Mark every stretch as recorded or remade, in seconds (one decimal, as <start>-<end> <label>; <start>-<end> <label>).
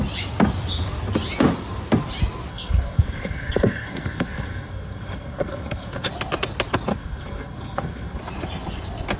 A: 0.0-2.5 recorded; 2.5-6.1 remade; 6.1-6.9 recorded; 6.9-8.2 remade; 8.2-9.2 recorded